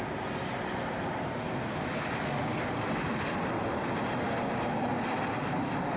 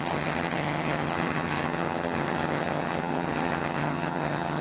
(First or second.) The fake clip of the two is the second